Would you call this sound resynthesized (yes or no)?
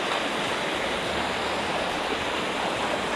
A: no